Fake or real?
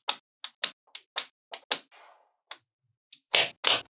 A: real